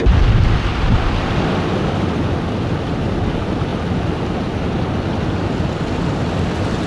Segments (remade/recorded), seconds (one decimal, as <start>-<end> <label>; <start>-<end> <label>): 0.0-6.9 recorded